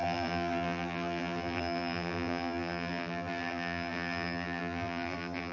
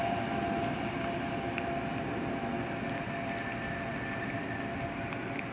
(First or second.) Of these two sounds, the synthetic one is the first